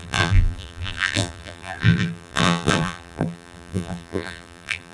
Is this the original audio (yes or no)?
no